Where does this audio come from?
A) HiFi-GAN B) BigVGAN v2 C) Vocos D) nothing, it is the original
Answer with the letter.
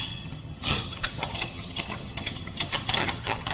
A